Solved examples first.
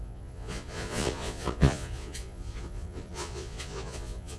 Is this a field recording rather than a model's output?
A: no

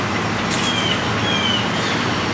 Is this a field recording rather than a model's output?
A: yes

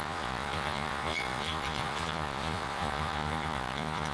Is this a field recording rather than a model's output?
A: no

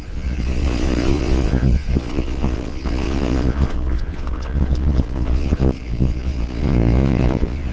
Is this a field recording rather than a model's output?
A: no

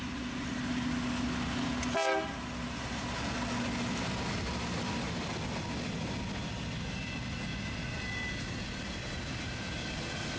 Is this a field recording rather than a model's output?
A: yes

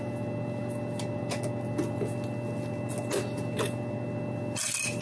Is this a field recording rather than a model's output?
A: yes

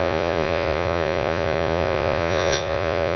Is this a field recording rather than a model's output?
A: no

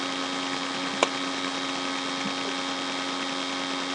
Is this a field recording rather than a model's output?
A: yes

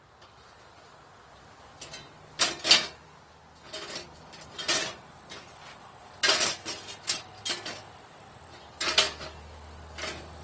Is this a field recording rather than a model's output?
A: yes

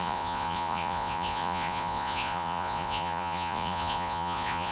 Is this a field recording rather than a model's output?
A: no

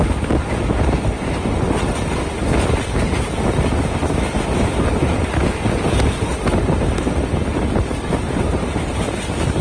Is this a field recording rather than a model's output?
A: yes